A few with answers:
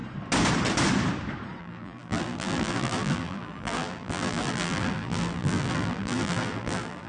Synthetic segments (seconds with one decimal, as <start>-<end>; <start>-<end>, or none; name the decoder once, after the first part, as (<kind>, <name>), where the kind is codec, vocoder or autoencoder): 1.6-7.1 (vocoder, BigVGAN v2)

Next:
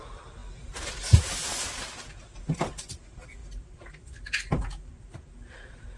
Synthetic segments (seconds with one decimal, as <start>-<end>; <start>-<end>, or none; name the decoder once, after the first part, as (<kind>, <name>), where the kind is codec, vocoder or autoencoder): none

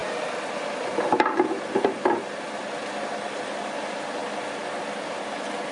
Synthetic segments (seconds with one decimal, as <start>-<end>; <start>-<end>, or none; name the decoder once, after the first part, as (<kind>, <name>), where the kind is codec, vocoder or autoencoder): none

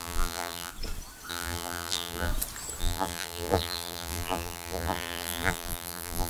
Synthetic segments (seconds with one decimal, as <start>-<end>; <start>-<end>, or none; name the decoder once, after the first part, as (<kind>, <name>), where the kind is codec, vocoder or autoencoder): 0.0-0.7 (vocoder, BigVGAN v2); 1.3-2.3; 2.8-6.3

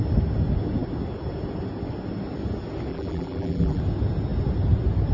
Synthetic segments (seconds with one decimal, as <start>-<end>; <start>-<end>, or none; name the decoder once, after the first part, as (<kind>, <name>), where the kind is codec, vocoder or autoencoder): 2.9-3.8 (vocoder, BigVGAN v2)

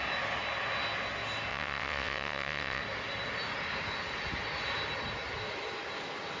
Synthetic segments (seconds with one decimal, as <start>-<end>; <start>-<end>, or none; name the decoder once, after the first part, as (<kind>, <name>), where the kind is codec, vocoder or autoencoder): 1.5-2.8 (vocoder, WaveNeXt)

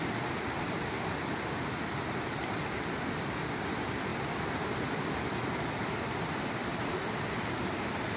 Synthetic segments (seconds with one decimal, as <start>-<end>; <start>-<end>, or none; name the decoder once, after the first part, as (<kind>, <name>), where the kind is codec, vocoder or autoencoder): 6.7-8.2 (vocoder, BigVGAN v2)